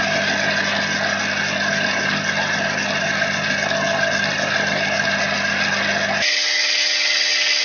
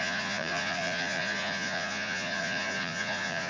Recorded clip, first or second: first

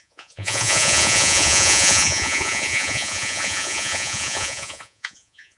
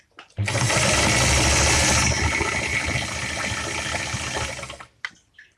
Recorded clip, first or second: second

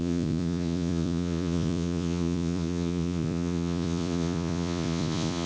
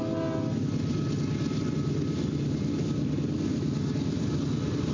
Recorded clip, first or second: second